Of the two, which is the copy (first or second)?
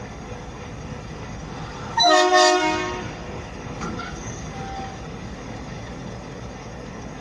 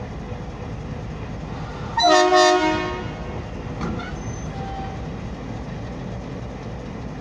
first